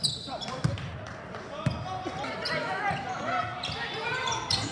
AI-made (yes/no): no